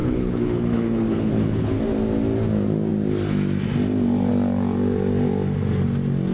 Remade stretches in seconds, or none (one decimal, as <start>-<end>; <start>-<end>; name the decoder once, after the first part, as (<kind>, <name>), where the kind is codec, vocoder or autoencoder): 0.0-1.8 (codec, HILCodec)